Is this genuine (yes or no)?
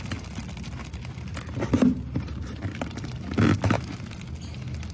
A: yes